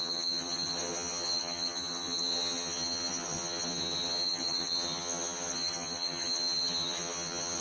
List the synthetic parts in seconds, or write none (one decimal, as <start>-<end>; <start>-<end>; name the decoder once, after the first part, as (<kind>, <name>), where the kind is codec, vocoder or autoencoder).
0.0-7.6 (vocoder, HiFi-GAN)